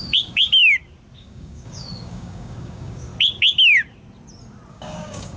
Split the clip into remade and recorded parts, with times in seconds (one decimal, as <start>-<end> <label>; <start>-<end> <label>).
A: 0.0-0.6 remade; 0.6-1.2 recorded; 1.2-3.1 remade; 3.1-4.7 recorded; 4.7-5.4 remade